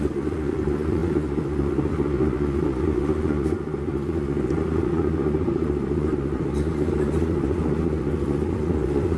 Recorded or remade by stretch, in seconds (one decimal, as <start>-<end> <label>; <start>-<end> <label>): 0.0-9.2 remade

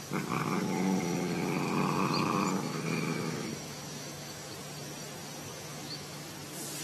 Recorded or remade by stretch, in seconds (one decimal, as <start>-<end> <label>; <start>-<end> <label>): 0.0-2.7 recorded; 2.7-4.5 remade; 4.5-5.5 recorded; 5.5-6.3 remade; 6.3-6.8 recorded

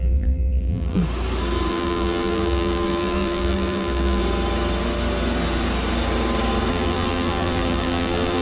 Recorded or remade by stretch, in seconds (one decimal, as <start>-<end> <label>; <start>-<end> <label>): 0.0-1.0 remade; 1.0-1.7 recorded; 1.7-4.2 remade; 4.2-6.7 recorded; 6.7-8.4 remade

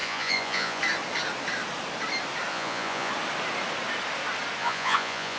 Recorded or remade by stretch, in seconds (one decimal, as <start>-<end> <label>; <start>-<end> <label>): 0.0-0.8 remade; 0.8-2.5 recorded; 2.5-3.1 remade; 3.1-4.6 recorded; 4.6-5.4 remade

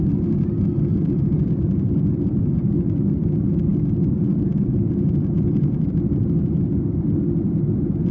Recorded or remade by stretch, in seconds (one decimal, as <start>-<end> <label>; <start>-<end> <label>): 0.0-8.1 recorded

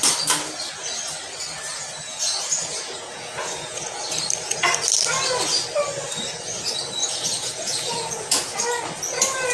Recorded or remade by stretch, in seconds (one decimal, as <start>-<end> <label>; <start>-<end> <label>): 0.0-1.7 recorded; 1.7-4.1 remade; 4.1-7.0 recorded; 7.0-8.6 remade; 8.6-9.5 recorded